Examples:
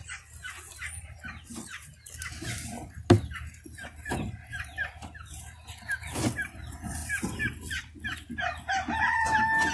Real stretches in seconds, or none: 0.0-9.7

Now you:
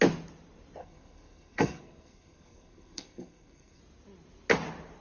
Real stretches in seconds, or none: 0.0-0.8; 3.8-5.0

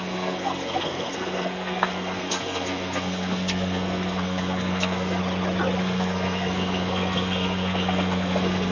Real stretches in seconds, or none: 5.2-5.8

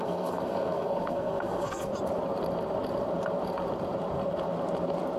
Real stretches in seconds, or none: 1.9-5.2

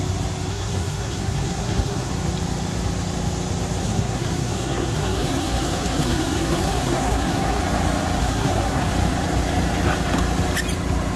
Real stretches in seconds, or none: 0.0-0.5; 2.1-3.8; 7.6-8.2; 8.9-11.2

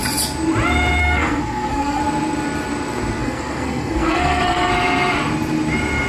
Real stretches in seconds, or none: 0.0-1.0; 2.0-3.2; 4.7-6.1

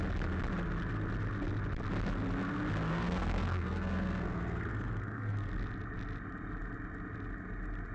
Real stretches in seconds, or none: 0.0-2.9; 5.5-7.9